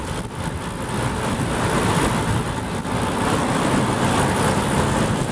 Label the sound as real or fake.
real